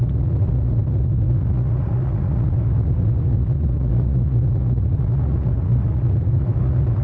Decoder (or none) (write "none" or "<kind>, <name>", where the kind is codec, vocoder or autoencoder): vocoder, Vocos